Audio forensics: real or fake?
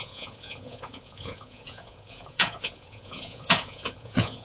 fake